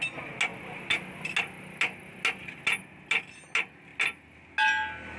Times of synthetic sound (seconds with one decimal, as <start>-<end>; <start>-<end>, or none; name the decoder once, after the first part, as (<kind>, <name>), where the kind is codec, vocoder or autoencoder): none

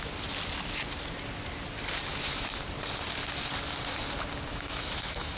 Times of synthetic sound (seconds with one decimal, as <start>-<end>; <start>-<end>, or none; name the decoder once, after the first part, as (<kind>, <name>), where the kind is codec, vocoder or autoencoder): 2.1-2.6 (autoencoder, DAC-VAE); 4.5-5.4

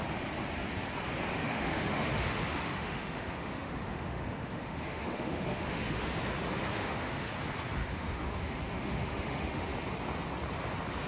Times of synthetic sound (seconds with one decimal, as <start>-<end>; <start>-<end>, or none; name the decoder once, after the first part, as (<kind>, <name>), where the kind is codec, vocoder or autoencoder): 1.3-6.2 (autoencoder, DAC-VAE); 6.7-7.3; 7.8-9.7